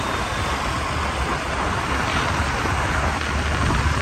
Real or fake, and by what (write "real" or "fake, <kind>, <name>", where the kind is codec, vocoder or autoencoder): real